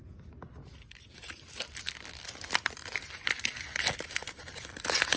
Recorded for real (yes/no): yes